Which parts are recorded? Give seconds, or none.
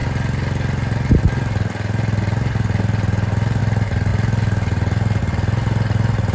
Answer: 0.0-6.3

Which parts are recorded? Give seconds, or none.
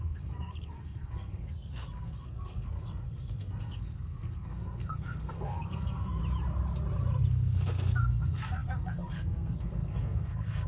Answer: 6.2-7.3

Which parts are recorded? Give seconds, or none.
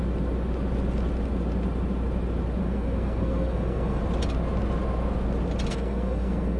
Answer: 0.0-2.6; 4.0-5.7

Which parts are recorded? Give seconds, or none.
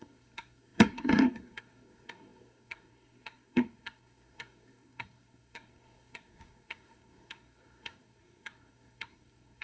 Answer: none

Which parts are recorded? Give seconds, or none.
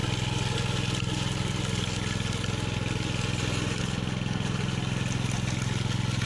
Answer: 0.0-6.3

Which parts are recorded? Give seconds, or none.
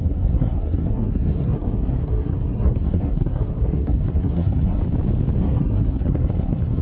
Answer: 4.8-5.4